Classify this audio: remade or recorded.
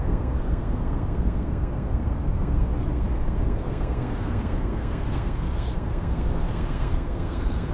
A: remade